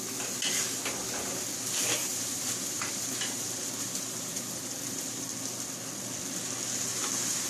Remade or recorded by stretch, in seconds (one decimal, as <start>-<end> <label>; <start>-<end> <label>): 0.0-2.0 recorded; 2.0-5.3 remade; 5.3-6.9 recorded; 6.9-7.5 remade